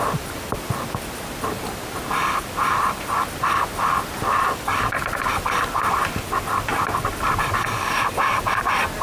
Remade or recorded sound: remade